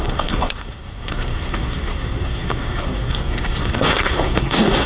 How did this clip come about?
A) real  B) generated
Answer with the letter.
B